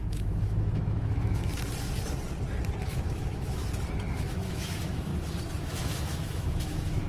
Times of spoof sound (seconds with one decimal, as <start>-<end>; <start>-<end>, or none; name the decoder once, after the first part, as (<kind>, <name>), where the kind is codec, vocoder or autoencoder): 0.0-1.5 (autoencoder, DAC-VAE); 2.8-3.6; 4.1-5.1; 5.6-7.1

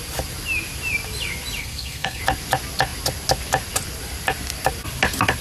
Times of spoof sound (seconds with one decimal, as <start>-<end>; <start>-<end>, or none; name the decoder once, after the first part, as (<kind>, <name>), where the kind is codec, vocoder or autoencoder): 1.6-2.2 (codec, SNAC)

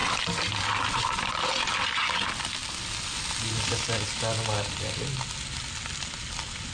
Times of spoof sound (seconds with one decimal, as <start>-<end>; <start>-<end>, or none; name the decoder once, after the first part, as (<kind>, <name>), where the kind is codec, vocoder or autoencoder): none

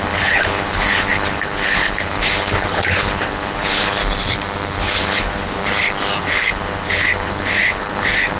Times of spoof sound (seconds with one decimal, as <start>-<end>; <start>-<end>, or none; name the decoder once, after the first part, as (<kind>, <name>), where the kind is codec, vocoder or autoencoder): 0.0-4.0 (codec, HILCodec); 4.8-5.6; 6.2-8.4

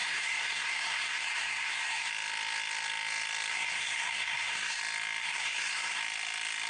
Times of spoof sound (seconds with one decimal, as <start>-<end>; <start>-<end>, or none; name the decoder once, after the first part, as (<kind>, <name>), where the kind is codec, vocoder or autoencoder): 0.0-2.1 (codec, SNAC); 3.5-4.8; 5.2-6.0

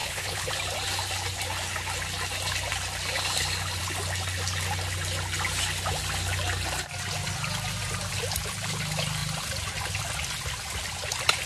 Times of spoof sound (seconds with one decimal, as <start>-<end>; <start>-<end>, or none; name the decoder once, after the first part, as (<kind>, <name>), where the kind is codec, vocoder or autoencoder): 0.0-0.5 (codec, HILCodec)

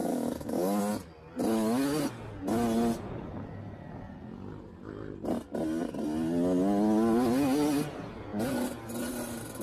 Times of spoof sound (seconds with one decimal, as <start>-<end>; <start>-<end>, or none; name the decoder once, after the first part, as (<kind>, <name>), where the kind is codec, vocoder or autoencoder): 0.0-0.8 (codec, DAC)